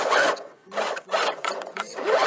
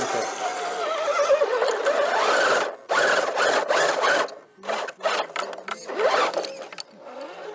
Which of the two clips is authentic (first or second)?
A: second